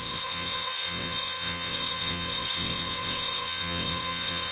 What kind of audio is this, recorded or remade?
remade